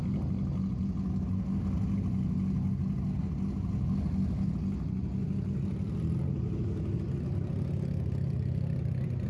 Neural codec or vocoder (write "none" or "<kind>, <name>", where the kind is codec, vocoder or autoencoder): none